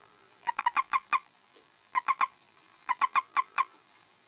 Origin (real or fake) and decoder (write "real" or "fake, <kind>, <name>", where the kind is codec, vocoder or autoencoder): fake, vocoder, BigVGAN v2